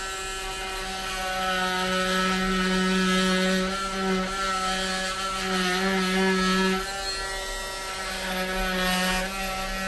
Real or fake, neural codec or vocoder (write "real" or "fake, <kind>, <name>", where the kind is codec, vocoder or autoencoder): real